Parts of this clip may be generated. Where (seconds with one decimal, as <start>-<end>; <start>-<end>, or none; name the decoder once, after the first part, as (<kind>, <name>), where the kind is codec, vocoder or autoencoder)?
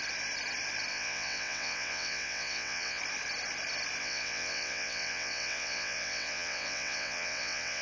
0.9-3.0 (vocoder, WaveNeXt); 4.0-7.8